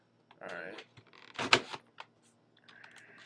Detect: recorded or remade recorded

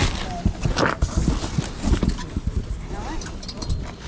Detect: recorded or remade recorded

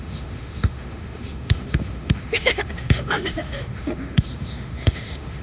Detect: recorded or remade remade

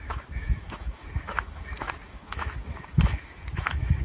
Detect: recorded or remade remade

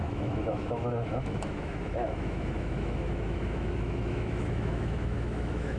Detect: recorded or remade remade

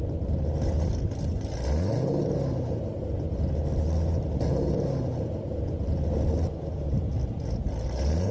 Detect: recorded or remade recorded